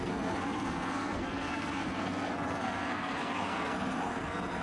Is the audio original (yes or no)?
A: no